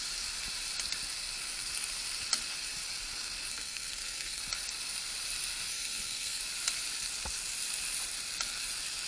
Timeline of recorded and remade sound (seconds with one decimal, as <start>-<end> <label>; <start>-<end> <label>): 0.0-3.5 recorded; 3.5-4.4 remade; 4.4-5.7 recorded; 5.7-6.4 remade; 6.4-9.1 recorded